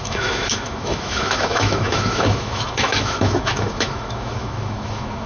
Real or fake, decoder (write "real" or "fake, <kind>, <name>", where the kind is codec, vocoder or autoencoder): fake, autoencoder, DAC-VAE